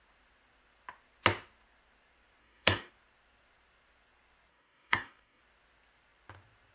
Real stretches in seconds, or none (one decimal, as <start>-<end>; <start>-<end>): 0.0-2.4; 2.9-4.5; 5.4-6.7